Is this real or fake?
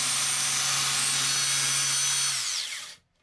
real